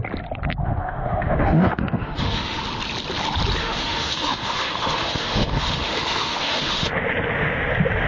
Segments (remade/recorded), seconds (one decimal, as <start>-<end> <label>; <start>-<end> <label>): 0.0-0.6 recorded; 0.6-2.6 remade; 2.6-3.6 recorded; 3.6-6.9 remade; 6.9-8.1 recorded